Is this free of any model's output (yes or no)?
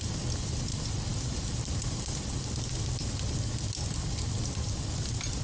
yes